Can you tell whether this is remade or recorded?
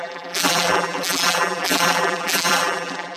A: remade